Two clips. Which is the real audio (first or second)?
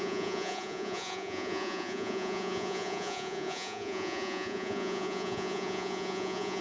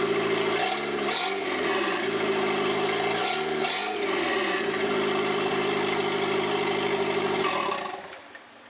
second